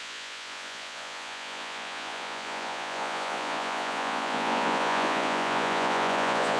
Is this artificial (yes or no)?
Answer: yes